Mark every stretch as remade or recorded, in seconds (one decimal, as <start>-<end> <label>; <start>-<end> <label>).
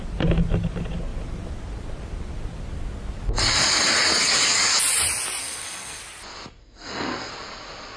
0.0-5.4 recorded; 5.4-6.0 remade; 6.0-6.6 recorded; 6.6-7.3 remade; 7.3-8.0 recorded